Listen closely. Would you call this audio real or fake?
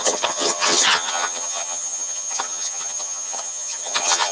fake